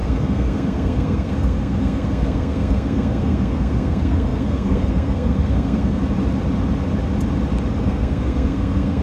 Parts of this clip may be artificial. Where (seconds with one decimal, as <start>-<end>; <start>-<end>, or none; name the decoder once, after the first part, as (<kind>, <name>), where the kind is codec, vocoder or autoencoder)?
0.0-6.0 (codec, SNAC); 7.8-9.0